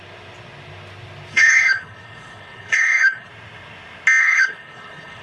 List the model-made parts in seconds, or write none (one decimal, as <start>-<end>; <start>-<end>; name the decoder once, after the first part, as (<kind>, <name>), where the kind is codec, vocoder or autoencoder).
1.3-3.3 (codec, HILCodec); 4.2-5.2